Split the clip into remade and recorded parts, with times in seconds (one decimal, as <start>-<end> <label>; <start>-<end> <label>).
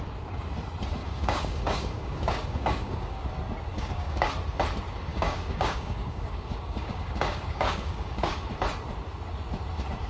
0.0-1.0 recorded; 1.0-3.3 remade; 3.3-3.7 recorded; 3.7-4.3 remade; 4.3-5.1 recorded; 5.1-8.3 remade; 8.3-10.1 recorded